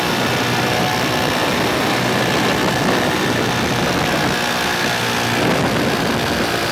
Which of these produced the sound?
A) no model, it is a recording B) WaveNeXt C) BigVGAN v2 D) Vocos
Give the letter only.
A